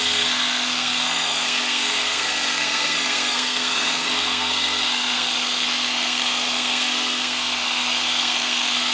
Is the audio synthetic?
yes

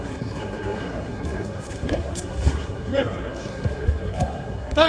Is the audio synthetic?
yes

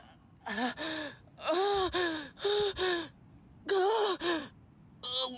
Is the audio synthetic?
no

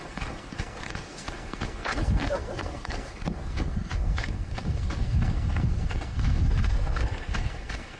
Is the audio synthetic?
yes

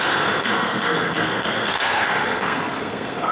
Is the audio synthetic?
yes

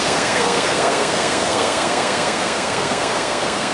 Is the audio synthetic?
yes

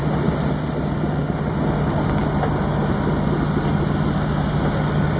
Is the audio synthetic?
no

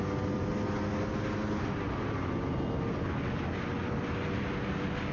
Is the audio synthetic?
no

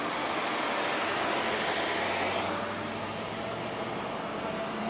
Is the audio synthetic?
no